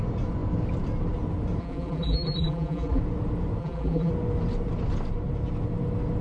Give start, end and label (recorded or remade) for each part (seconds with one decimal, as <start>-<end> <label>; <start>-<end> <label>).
0.0-1.6 recorded; 1.6-3.0 remade; 3.0-3.6 recorded; 3.6-4.1 remade; 4.1-6.2 recorded